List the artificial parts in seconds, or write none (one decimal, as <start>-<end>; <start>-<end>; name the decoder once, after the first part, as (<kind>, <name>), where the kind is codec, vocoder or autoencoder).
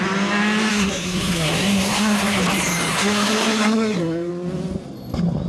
0.7-2.4 (codec, SNAC); 2.9-4.3